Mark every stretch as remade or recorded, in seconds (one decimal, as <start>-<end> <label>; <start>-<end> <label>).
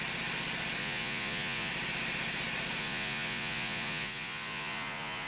0.0-0.8 recorded; 0.8-1.7 remade; 1.7-2.8 recorded; 2.8-5.3 remade